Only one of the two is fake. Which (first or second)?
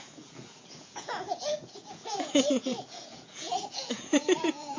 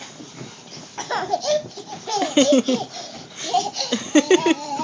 first